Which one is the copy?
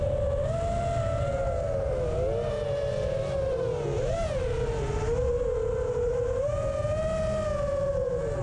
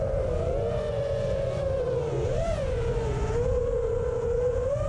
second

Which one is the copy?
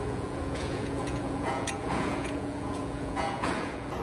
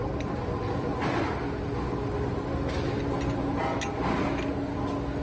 first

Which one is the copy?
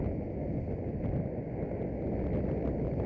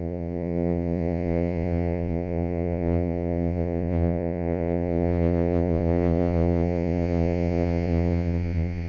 second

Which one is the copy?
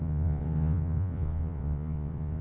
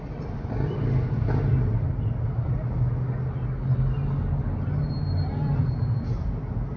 first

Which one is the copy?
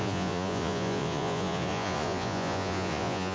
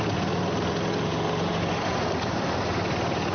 first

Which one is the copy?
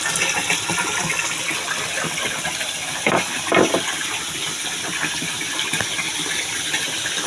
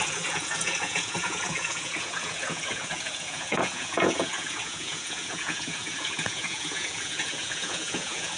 second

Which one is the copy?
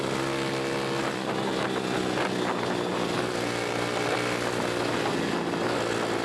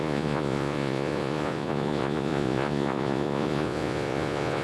second